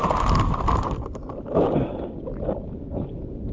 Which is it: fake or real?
real